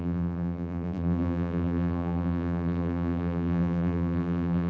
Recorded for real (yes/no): no